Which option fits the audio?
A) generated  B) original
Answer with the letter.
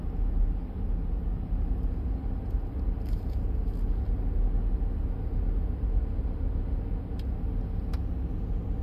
B